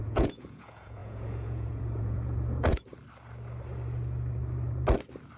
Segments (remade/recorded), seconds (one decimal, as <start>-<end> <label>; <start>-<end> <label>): 0.0-2.9 remade; 2.9-5.4 recorded